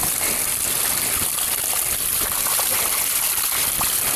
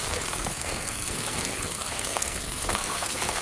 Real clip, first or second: first